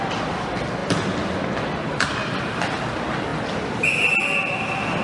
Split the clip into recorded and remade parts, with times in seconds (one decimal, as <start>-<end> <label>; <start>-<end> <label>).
0.0-2.2 recorded; 2.2-2.8 remade; 2.8-5.0 recorded